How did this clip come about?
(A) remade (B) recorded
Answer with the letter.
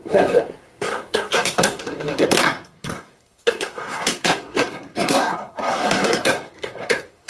A